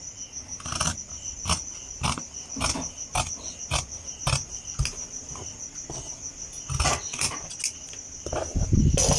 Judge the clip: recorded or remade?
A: recorded